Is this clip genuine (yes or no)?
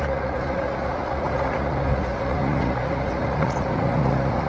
no